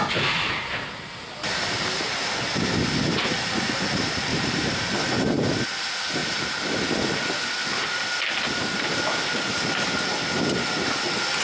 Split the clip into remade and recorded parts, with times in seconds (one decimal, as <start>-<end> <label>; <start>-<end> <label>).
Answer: 0.0-4.3 recorded; 4.3-4.9 remade; 4.9-6.2 recorded; 6.2-6.8 remade; 6.8-11.4 recorded